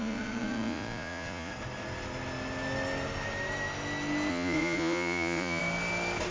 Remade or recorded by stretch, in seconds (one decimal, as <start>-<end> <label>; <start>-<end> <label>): 0.0-1.5 remade; 1.5-4.3 recorded; 4.3-5.6 remade; 5.6-6.3 recorded